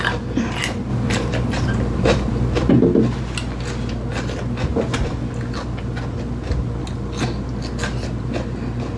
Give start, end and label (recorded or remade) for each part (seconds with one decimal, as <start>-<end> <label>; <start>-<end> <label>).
0.0-0.9 recorded; 0.9-2.7 remade; 2.7-9.0 recorded